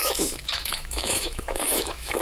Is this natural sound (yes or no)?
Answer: no